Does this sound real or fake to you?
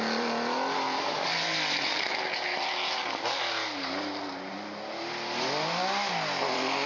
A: real